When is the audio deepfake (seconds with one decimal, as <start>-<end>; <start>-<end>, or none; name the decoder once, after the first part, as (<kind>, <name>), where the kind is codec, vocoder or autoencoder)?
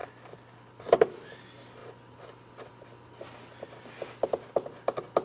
none